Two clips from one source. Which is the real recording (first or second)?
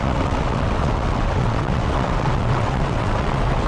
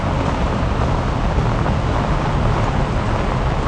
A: second